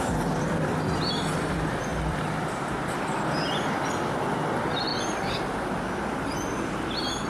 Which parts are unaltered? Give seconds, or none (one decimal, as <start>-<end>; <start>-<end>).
0.0-7.3

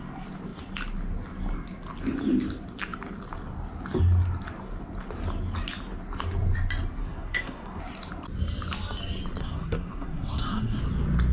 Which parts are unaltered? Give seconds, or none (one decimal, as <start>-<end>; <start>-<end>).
0.0-7.0; 7.8-9.4; 10.8-11.3

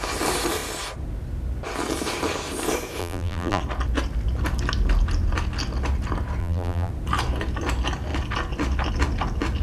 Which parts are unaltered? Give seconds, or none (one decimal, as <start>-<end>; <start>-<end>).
0.0-3.0; 3.6-6.4; 6.9-9.6

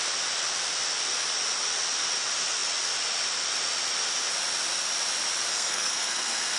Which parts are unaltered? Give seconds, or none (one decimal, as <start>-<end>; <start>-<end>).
0.0-5.5

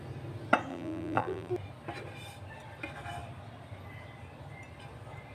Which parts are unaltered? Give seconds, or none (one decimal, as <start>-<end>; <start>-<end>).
0.0-0.7; 1.5-5.3

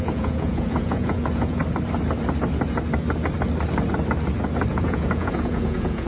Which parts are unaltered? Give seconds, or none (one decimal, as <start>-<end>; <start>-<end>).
1.6-4.7

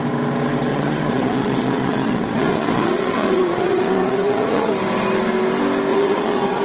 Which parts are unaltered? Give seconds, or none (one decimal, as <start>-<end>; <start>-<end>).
0.0-0.7; 4.7-5.9